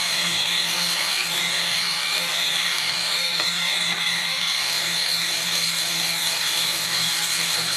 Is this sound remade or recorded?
remade